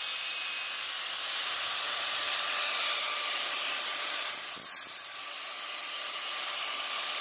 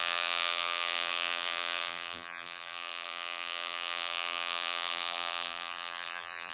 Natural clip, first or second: first